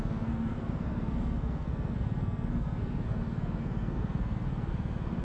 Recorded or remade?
remade